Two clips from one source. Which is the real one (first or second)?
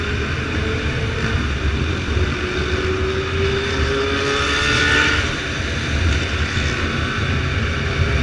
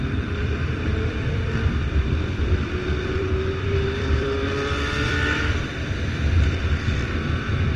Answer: first